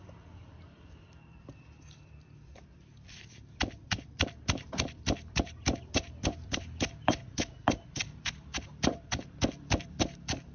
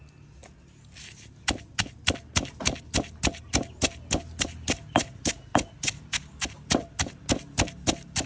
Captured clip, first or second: second